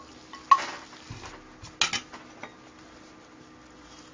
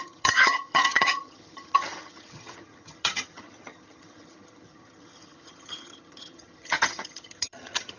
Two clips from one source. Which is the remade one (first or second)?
second